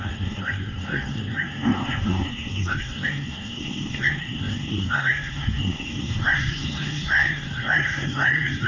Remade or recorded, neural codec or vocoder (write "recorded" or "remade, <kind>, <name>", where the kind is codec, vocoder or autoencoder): remade, codec, SNAC